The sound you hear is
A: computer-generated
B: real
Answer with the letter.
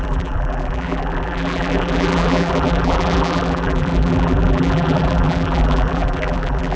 A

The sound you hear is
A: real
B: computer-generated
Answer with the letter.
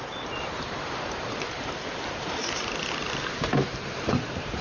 B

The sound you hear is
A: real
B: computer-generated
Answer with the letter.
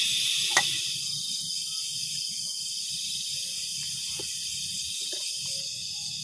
B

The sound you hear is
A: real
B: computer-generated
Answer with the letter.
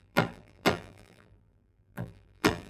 B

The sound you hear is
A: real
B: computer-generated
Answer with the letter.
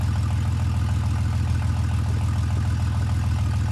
A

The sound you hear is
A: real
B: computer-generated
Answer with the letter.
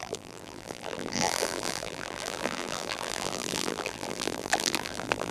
B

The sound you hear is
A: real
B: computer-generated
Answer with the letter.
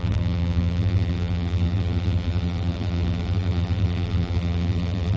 B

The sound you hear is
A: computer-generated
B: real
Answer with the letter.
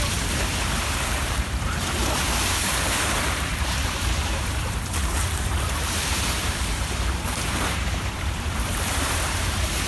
A